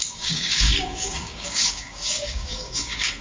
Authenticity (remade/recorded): remade